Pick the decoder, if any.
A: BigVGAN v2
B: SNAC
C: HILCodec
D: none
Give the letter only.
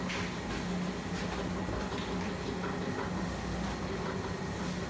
D